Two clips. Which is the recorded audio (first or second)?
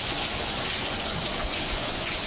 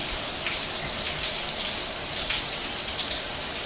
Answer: second